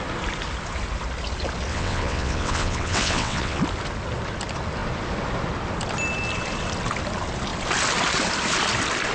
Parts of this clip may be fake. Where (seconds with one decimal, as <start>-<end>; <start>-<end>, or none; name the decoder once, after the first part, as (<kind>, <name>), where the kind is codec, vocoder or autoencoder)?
1.7-3.6 (vocoder, WaveNeXt)